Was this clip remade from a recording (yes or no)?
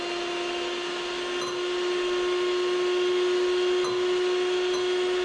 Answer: no